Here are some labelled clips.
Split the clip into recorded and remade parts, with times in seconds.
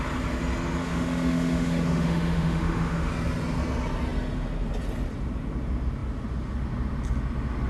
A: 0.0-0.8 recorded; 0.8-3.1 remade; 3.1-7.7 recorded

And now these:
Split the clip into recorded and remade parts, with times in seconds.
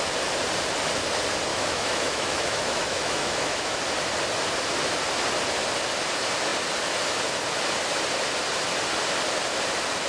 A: 0.0-1.5 recorded; 1.5-3.8 remade; 3.8-10.1 recorded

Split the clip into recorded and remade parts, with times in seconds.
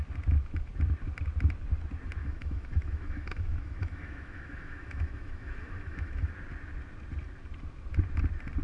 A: 0.0-2.2 recorded; 2.2-6.3 remade; 6.3-8.6 recorded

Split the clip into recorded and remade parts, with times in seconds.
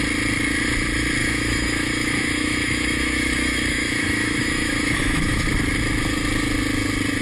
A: 0.0-1.2 recorded; 1.2-5.5 remade; 5.5-7.2 recorded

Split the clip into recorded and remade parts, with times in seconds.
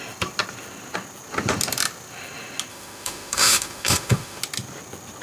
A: 0.0-2.7 recorded; 2.7-4.4 remade; 4.4-5.2 recorded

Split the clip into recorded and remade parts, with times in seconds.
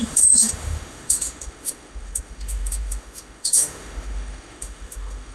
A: 0.0-5.3 remade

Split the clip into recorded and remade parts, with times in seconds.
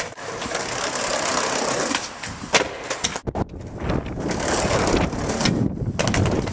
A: 0.0-6.5 recorded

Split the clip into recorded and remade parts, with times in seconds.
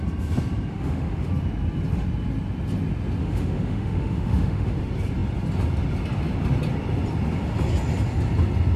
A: 0.0-0.7 recorded; 0.7-1.3 remade; 1.3-3.2 recorded; 3.2-4.8 remade; 4.8-8.8 recorded